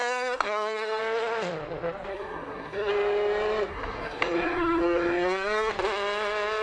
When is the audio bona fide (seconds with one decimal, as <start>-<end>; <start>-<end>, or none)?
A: 1.0-2.1; 2.9-3.7; 5.7-6.6